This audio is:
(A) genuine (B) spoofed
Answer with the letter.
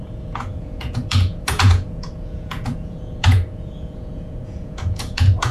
B